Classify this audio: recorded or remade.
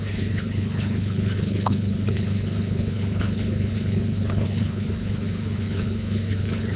remade